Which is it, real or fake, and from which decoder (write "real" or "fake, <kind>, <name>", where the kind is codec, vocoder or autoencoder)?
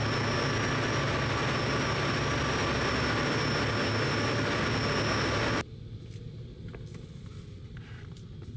real